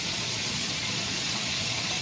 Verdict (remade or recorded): remade